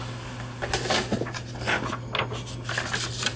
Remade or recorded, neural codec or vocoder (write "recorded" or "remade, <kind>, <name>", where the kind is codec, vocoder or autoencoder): recorded